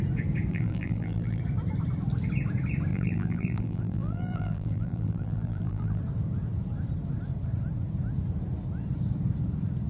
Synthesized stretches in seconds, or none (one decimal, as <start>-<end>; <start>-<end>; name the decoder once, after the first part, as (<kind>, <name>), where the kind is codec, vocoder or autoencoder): 0.5-1.4 (vocoder, BigVGAN v2); 2.9-6.0